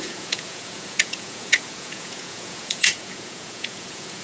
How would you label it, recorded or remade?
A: remade